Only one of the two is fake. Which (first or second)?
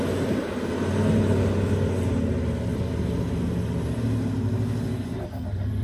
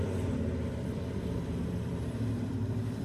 second